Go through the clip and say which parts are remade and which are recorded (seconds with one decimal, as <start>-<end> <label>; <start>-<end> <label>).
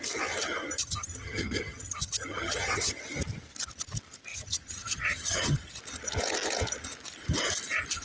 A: 0.0-0.8 recorded; 0.8-3.0 remade; 3.0-4.3 recorded; 4.3-5.8 remade; 5.8-8.0 recorded